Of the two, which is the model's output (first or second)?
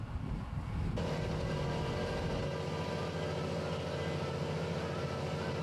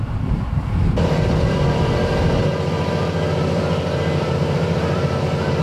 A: second